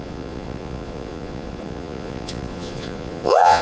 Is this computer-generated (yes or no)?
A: yes